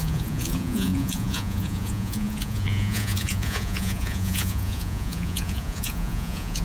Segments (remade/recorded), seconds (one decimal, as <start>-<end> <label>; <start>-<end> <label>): 0.0-6.6 remade